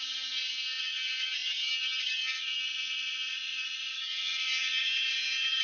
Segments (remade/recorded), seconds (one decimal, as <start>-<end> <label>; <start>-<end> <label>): 0.0-5.6 remade